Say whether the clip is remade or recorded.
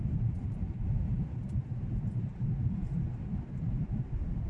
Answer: remade